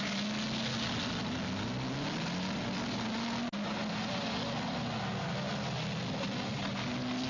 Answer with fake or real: real